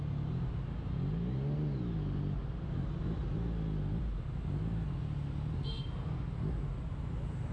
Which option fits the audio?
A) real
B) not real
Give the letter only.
A